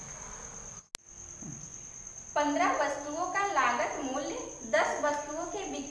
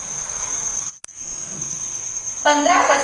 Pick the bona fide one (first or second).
first